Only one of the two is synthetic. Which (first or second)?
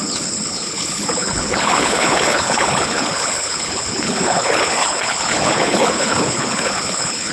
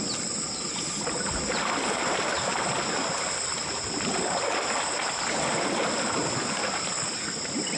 first